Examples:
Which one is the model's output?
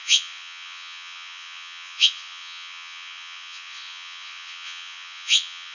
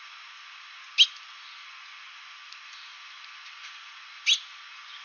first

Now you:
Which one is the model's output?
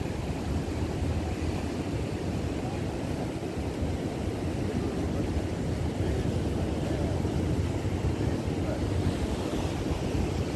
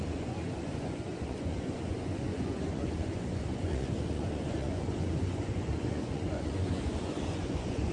second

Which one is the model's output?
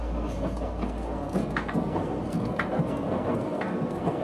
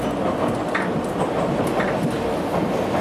first